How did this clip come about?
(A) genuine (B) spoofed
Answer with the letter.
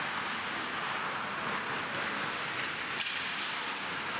A